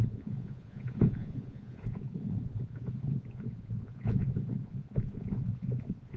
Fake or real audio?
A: fake